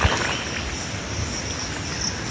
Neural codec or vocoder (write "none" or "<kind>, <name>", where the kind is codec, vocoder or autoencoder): none